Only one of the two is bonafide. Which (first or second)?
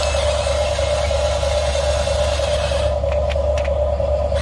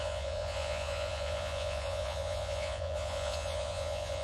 first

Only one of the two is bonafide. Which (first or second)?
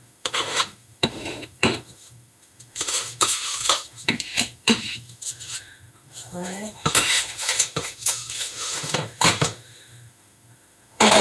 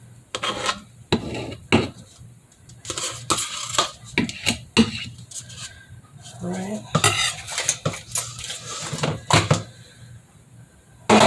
second